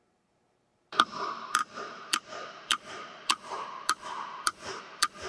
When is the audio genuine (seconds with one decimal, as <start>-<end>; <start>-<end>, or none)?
none

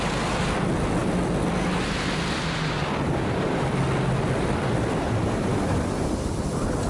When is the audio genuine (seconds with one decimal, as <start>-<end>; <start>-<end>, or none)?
0.0-1.0; 5.1-5.5; 6.5-6.9

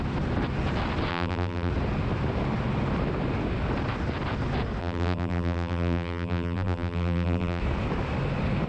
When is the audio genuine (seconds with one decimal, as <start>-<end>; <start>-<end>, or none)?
0.0-1.1; 1.7-4.8; 7.6-8.7